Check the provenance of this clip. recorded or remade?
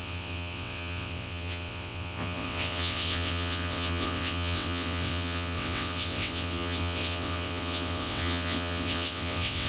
remade